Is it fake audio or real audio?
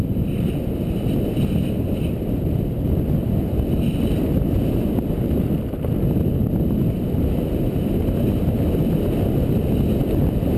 real